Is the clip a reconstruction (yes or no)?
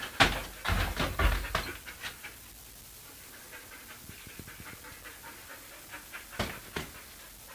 no